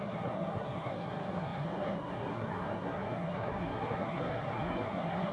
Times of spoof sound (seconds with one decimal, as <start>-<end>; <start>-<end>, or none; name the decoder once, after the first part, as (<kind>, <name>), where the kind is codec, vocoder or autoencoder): 0.0-5.3 (codec, SNAC)